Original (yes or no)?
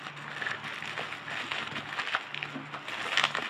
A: yes